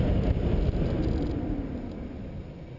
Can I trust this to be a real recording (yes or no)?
yes